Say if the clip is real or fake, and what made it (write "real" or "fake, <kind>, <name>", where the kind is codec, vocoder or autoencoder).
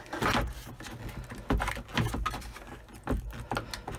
real